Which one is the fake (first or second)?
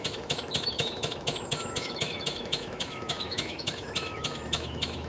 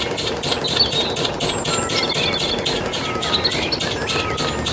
first